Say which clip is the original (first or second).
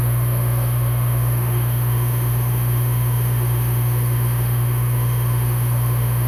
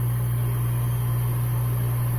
second